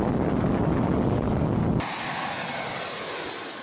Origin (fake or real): real